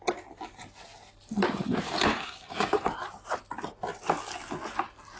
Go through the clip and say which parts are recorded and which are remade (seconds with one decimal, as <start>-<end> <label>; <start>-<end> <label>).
0.0-2.1 recorded; 2.1-2.9 remade; 2.9-5.2 recorded